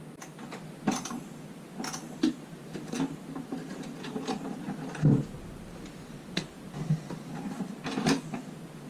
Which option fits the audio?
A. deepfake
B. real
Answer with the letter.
B